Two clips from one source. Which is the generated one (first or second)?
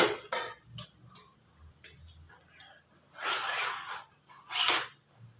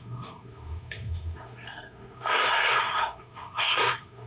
second